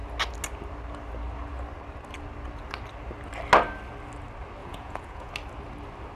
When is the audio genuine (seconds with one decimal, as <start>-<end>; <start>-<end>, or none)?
0.0-4.6; 5.3-6.2